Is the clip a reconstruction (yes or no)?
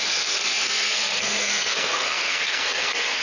yes